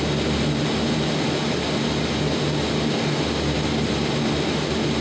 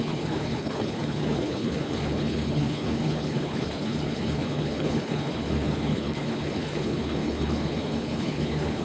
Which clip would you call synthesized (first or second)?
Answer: second